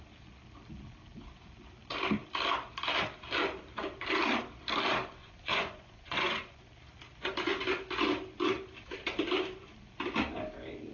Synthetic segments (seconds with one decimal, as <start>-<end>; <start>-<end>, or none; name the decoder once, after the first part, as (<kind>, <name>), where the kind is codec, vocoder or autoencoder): 5.2-6.6 (vocoder, Vocos)